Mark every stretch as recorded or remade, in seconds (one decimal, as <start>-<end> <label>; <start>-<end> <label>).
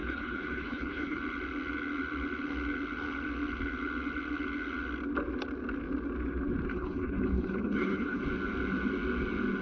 0.0-1.2 remade; 1.2-6.7 recorded; 6.7-8.2 remade; 8.2-9.6 recorded